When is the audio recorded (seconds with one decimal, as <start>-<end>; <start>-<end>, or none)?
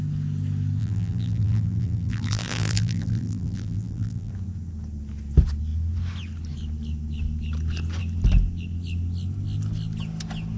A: 0.0-0.8; 4.3-10.6